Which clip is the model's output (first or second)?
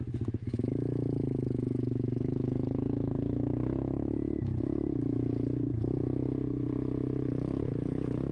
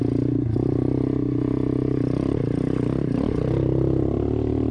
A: first